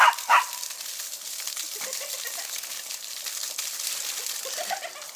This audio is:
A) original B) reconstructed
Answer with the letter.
A